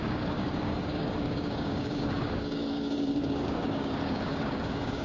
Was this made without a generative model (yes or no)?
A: no